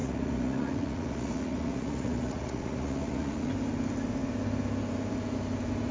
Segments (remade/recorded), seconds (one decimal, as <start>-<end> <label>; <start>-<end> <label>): 0.0-3.5 remade; 3.5-5.9 recorded